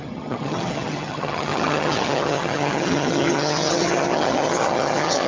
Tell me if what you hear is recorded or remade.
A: remade